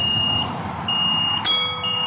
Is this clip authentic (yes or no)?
yes